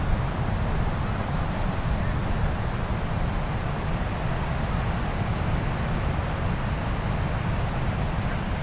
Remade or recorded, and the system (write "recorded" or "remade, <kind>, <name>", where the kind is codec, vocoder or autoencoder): recorded